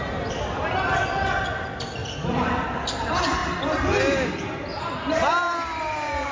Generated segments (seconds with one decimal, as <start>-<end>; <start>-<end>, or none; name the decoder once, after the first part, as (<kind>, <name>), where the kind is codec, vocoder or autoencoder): none